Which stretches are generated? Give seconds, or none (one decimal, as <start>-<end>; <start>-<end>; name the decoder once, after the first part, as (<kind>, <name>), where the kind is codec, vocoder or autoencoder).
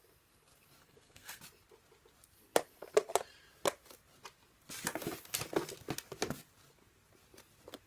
0.8-1.4 (codec, SNAC)